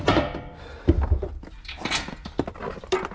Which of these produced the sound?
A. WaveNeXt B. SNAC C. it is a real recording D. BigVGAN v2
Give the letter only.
C